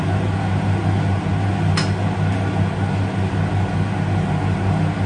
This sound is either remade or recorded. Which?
recorded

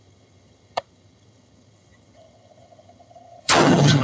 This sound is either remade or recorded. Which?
remade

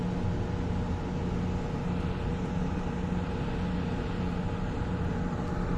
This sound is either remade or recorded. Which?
recorded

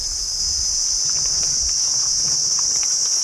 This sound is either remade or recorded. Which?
recorded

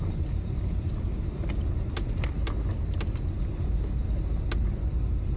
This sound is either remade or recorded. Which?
recorded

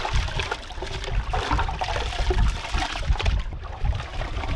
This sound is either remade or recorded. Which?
recorded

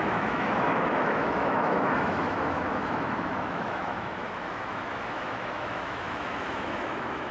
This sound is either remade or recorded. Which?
remade